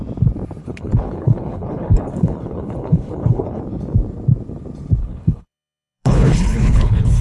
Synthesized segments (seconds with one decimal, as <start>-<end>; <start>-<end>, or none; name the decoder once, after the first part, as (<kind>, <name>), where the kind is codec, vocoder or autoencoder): 0.6-3.6 (codec, HILCodec); 5.0-7.2

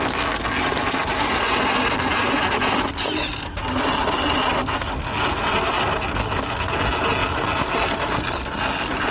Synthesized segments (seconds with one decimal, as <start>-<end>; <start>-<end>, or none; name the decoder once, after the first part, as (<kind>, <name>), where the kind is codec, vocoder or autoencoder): none

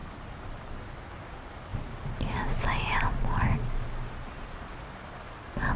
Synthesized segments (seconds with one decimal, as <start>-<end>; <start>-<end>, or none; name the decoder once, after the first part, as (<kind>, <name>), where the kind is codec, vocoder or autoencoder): none

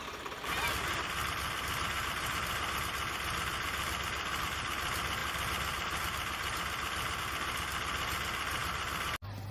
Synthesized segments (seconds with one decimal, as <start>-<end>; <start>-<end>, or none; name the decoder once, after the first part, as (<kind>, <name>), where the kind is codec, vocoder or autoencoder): 1.2-2.7 (vocoder, BigVGAN v2); 3.5-4.5; 5.2-7.2

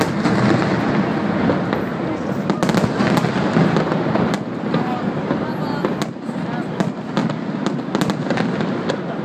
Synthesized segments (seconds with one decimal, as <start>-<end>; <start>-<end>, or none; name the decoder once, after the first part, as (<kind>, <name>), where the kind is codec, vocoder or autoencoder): none